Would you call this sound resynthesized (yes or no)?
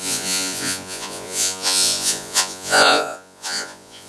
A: yes